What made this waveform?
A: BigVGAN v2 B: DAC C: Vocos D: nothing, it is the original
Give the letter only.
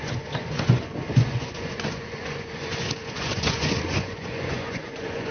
C